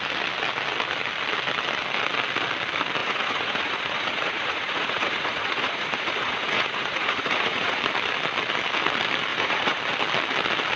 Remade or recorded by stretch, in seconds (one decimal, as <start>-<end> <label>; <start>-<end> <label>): 0.0-3.0 recorded; 3.0-7.8 remade; 7.8-9.3 recorded; 9.3-9.8 remade; 9.8-10.8 recorded